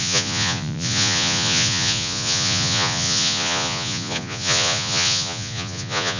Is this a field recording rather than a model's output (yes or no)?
no